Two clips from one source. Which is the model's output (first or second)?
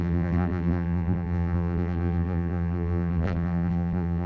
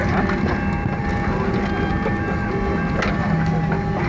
first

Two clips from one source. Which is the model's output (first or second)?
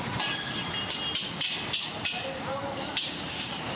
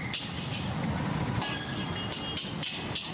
first